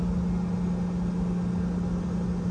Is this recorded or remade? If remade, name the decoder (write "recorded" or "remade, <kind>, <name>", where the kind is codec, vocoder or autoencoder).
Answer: recorded